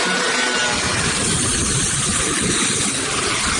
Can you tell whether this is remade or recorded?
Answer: recorded